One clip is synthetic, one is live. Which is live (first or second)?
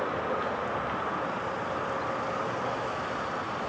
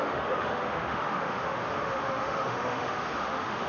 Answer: first